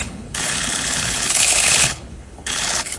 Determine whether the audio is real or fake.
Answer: fake